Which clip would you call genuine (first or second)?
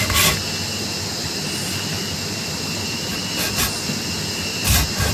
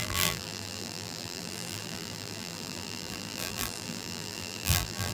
first